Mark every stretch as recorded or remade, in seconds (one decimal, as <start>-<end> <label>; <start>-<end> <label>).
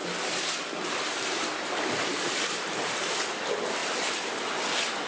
0.0-3.1 remade; 3.1-3.8 recorded; 3.8-4.4 remade; 4.4-5.1 recorded